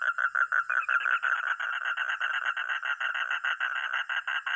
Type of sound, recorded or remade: recorded